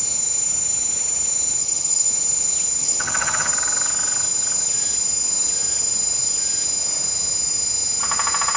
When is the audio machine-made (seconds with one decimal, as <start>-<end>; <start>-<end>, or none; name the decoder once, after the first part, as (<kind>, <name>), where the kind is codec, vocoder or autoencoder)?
1.6-2.1 (vocoder, HiFi-GAN); 2.8-3.5